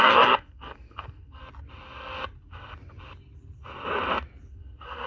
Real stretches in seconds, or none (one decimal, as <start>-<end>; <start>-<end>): 1.4-4.5